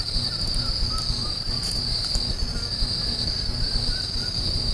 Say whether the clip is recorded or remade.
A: recorded